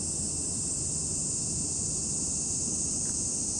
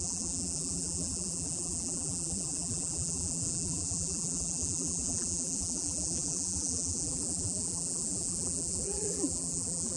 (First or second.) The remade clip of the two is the second